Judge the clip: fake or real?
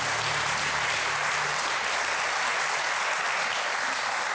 real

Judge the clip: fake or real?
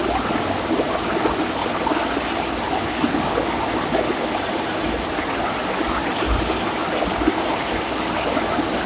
real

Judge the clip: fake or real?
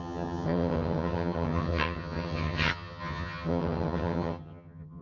fake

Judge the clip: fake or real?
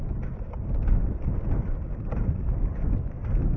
real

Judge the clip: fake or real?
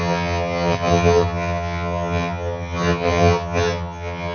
fake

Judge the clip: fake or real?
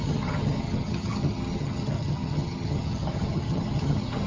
fake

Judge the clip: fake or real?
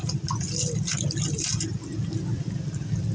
real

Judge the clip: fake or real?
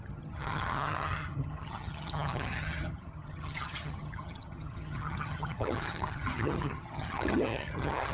fake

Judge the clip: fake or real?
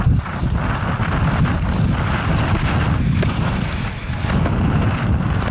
real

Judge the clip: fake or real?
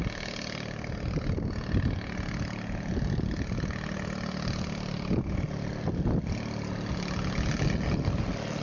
real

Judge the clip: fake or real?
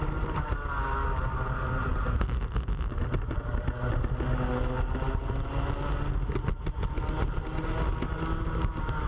real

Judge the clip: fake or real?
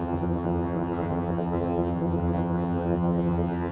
fake